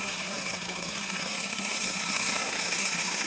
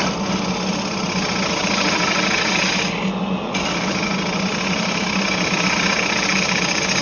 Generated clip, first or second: first